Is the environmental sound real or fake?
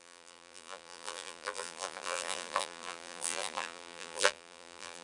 fake